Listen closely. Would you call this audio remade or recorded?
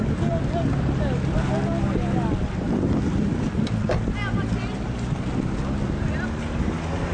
recorded